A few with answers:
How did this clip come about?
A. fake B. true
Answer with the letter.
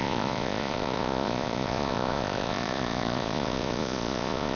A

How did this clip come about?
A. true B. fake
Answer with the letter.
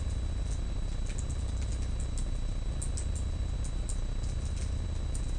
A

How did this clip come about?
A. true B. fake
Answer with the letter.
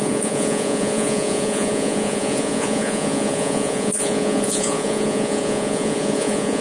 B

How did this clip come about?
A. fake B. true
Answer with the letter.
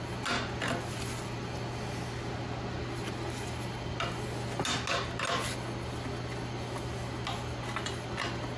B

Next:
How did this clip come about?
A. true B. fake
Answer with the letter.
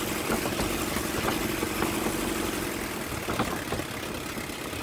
A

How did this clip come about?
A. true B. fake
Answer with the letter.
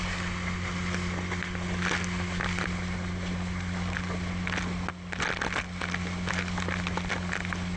A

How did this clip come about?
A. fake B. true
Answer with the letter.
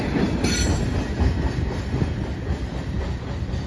B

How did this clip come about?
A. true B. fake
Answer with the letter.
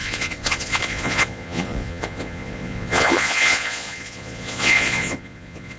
B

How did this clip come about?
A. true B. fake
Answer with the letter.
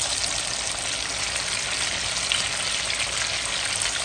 A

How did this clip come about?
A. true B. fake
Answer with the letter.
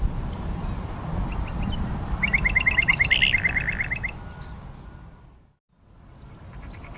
A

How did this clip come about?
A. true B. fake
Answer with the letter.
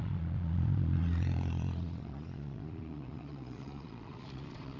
B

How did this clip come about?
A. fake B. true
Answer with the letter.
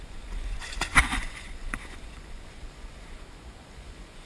A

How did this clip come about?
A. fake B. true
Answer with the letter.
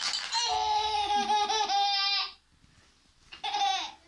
B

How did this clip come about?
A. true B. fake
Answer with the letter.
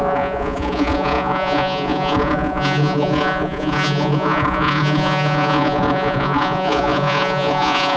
B